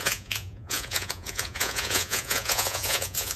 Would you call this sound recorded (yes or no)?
no